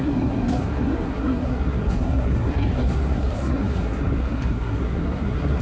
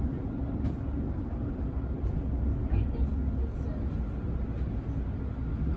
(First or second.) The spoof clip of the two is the first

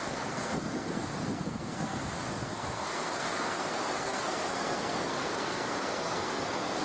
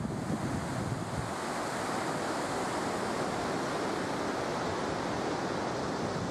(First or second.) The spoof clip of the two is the first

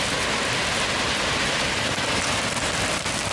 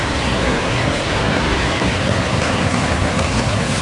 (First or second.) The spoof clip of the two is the second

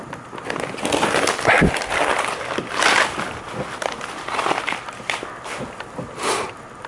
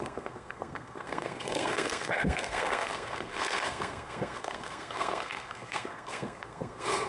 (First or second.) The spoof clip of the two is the second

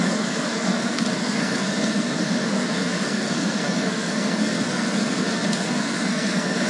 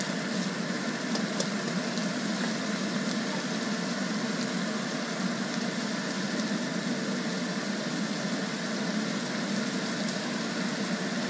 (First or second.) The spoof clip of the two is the first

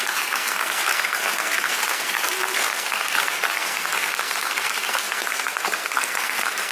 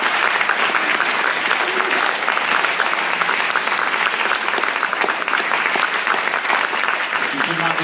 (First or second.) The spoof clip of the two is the first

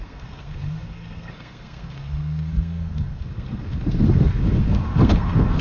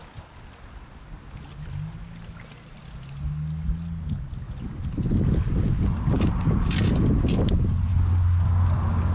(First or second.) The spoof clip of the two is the first